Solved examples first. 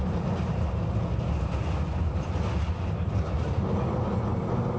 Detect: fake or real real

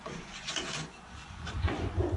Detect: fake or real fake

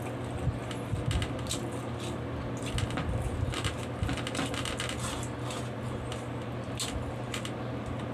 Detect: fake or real real